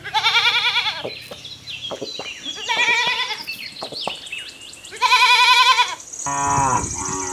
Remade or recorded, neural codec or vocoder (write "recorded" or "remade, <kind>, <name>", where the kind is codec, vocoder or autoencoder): recorded